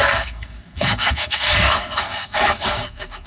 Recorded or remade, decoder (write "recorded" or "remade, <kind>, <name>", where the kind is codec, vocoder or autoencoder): remade, codec, SNAC